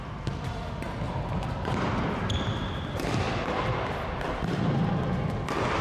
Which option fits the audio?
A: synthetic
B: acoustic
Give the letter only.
B